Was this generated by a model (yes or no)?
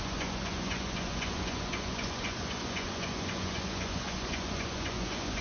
yes